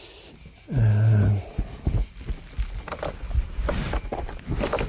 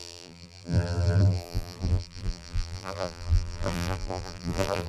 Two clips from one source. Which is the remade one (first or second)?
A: second